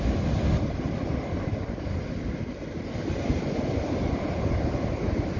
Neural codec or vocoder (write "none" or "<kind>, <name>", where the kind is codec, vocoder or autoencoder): none